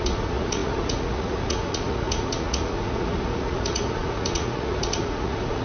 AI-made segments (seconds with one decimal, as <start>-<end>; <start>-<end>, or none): 0.0-5.6